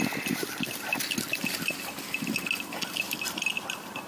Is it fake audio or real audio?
real